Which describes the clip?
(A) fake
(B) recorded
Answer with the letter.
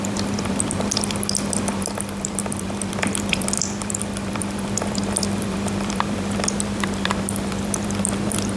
A